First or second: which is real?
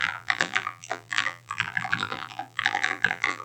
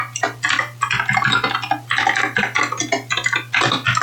second